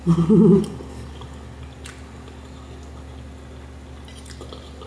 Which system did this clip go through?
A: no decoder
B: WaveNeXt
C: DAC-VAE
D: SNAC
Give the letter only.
A